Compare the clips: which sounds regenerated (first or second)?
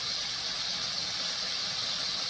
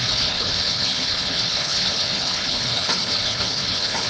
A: second